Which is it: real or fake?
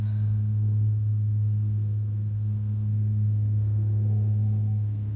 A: fake